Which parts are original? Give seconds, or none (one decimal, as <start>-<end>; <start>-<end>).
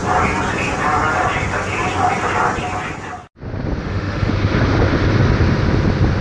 0.0-3.8; 4.3-6.2